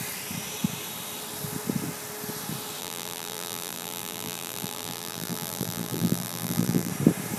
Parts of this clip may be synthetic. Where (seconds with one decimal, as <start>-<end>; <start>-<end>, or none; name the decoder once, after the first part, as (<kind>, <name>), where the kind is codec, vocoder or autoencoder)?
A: 2.8-6.9 (vocoder, BigVGAN v2)